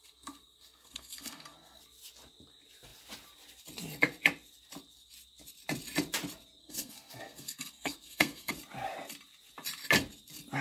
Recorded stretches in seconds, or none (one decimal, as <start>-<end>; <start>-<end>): 1.8-6.6; 8.5-10.6